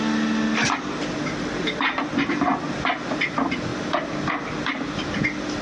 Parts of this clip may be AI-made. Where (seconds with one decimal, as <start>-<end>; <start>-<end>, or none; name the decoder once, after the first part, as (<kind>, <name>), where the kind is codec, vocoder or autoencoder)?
none